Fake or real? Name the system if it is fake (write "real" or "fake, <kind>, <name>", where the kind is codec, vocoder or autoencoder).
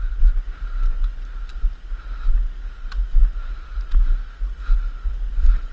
real